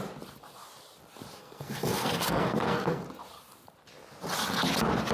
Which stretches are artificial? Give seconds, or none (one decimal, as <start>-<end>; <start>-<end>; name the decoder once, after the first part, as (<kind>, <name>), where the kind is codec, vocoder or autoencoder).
1.4-3.0 (codec, SNAC)